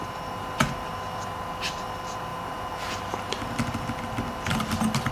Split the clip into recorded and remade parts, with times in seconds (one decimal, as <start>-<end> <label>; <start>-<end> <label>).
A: 0.0-5.1 recorded

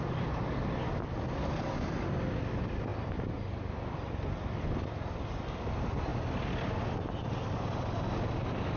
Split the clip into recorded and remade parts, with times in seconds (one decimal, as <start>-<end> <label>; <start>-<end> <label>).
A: 0.0-8.8 recorded

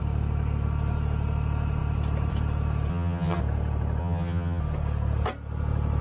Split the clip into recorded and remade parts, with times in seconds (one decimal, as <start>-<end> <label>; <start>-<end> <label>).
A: 0.0-2.9 recorded; 2.9-3.4 remade; 3.4-4.0 recorded; 4.0-4.6 remade; 4.6-6.0 recorded